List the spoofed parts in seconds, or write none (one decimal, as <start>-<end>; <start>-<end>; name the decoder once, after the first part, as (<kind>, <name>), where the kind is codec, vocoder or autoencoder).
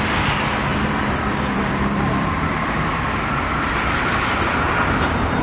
0.7-3.9 (vocoder, BigVGAN v2)